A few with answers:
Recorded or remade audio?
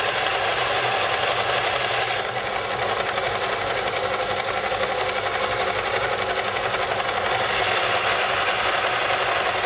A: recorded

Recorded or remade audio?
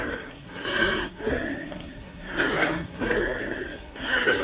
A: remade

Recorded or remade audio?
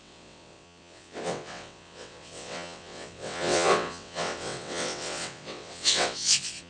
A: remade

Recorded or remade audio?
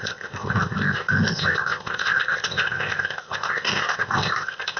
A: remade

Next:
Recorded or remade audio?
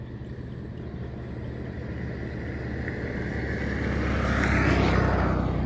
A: recorded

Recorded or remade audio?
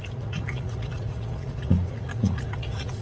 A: remade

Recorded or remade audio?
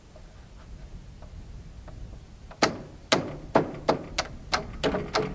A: recorded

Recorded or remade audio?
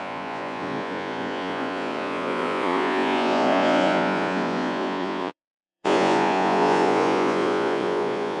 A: remade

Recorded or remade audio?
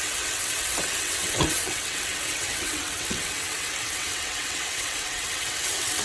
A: remade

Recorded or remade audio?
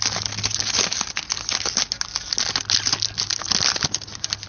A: recorded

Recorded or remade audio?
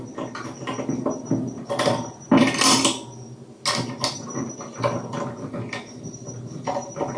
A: recorded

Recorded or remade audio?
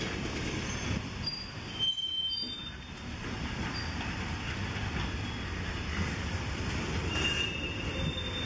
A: recorded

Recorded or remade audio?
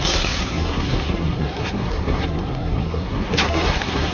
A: remade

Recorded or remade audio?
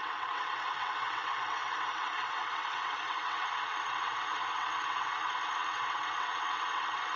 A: remade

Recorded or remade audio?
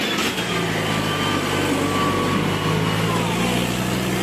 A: recorded